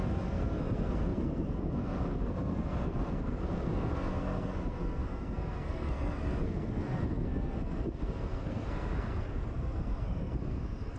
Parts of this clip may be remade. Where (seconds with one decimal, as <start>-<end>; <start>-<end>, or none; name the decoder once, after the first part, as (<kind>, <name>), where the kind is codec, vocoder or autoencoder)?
0.0-11.0 (codec, SNAC)